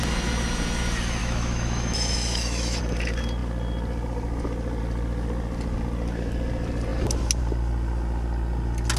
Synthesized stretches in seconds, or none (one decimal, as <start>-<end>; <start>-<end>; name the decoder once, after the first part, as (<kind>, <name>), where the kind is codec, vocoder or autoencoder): 1.2-2.8 (autoencoder, DAC-VAE)